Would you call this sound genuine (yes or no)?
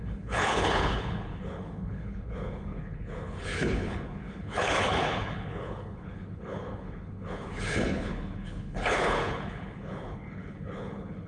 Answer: no